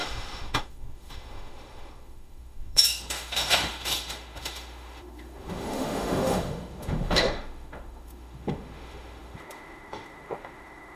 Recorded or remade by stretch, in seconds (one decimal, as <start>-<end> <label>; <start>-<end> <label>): 0.0-11.0 remade

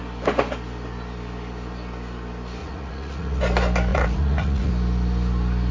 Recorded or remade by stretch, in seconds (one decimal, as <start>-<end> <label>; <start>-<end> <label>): 0.0-2.6 recorded; 2.6-3.4 remade; 3.4-3.9 recorded; 3.9-4.7 remade; 4.7-5.7 recorded

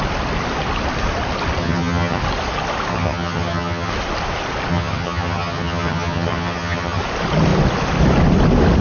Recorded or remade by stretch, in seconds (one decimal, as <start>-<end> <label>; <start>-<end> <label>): 0.0-1.6 recorded; 1.6-2.2 remade; 2.2-2.9 recorded; 2.9-3.9 remade; 3.9-4.7 recorded; 4.7-7.0 remade; 7.0-8.8 recorded